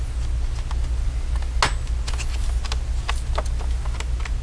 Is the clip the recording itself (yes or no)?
yes